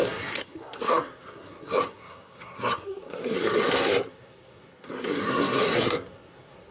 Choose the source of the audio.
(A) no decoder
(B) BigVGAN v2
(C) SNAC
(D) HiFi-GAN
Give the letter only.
C